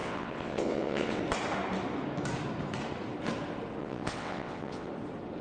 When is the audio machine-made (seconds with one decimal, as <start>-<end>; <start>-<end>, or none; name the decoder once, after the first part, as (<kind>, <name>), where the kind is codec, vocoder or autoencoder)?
0.0-1.2 (vocoder, WaveNeXt); 3.8-4.9